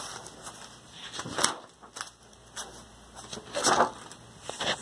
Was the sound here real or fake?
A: real